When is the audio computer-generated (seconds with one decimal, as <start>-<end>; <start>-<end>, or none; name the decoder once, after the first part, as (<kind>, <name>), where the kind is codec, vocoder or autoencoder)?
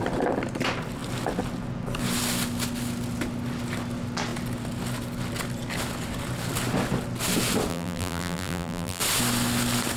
7.7-9.0 (vocoder, BigVGAN v2)